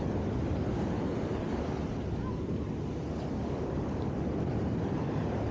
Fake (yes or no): no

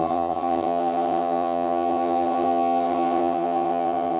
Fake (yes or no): yes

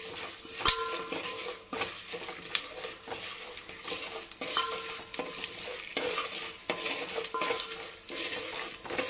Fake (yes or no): no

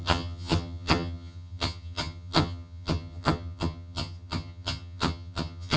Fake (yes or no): yes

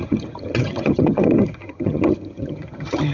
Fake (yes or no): yes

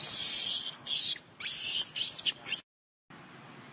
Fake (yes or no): no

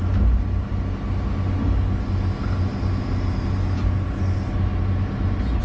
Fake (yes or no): no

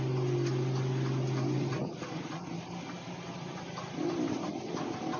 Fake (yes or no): no